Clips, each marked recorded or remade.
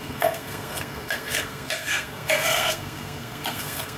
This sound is remade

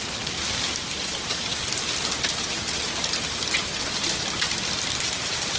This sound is recorded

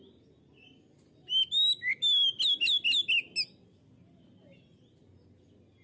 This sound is recorded